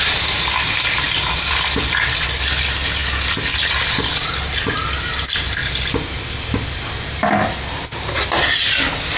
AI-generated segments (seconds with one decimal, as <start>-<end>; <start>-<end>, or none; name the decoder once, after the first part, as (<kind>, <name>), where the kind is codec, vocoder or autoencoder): none